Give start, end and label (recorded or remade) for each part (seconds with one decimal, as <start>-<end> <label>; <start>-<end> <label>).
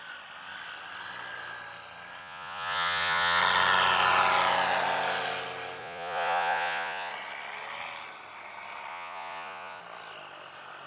0.0-2.2 recorded; 2.2-3.4 remade; 3.4-5.8 recorded; 5.8-7.1 remade; 7.1-8.9 recorded; 8.9-9.8 remade; 9.8-10.9 recorded